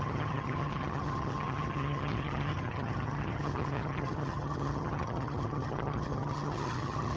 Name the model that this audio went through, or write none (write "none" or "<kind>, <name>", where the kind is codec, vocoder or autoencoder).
vocoder, HiFi-GAN